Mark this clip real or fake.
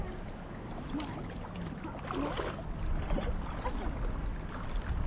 real